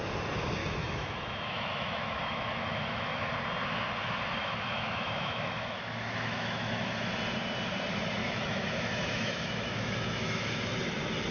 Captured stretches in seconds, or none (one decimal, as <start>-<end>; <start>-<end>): 0.0-0.6; 3.3-4.4; 7.1-8.2; 10.6-11.3